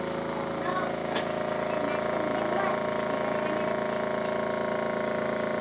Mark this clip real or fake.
real